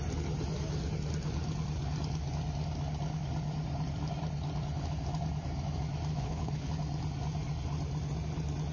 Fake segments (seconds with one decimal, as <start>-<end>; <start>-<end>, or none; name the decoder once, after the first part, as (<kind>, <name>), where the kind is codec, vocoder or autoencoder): 6.1-6.7 (codec, HILCodec)